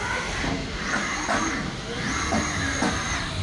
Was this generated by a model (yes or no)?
no